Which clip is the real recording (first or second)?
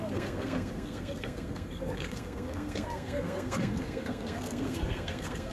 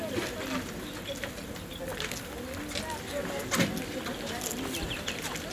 second